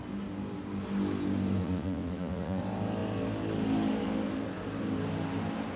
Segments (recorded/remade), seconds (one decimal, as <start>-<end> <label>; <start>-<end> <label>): 0.0-1.6 recorded; 1.6-2.6 remade; 2.6-5.8 recorded